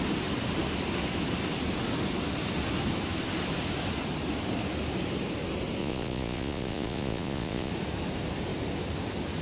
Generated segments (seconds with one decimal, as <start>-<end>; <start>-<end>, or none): 5.8-7.7